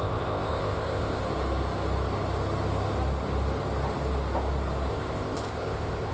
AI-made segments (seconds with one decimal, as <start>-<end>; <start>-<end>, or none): 0.0-1.2; 4.9-6.1